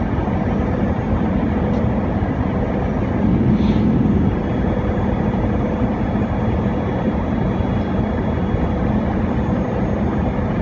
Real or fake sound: real